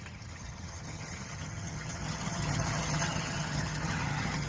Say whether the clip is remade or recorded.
remade